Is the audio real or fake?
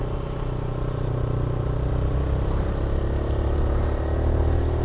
real